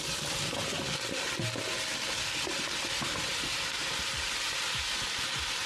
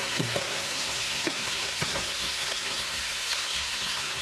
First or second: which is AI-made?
second